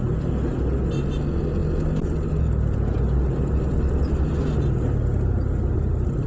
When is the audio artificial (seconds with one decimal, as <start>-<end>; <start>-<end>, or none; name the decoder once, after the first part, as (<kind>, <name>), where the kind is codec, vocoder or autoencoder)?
none